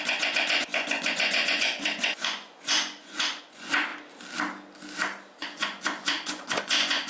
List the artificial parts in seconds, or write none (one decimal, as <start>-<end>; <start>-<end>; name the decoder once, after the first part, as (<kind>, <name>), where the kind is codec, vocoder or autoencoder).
0.0-3.9 (vocoder, Vocos); 5.4-7.1